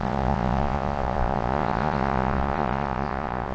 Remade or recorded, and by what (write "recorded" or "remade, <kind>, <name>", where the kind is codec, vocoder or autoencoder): remade, vocoder, Vocos